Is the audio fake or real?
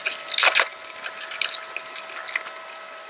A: real